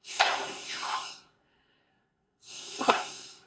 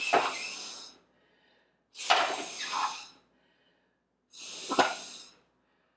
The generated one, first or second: first